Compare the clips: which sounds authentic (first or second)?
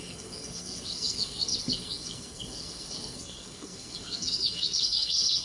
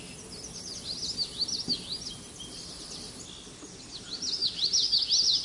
second